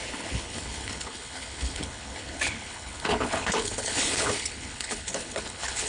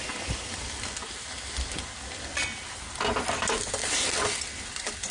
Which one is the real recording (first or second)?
second